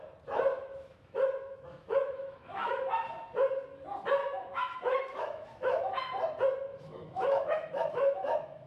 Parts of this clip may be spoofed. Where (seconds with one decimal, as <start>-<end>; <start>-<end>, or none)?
0.5-2.8; 4.2-6.0; 6.7-8.7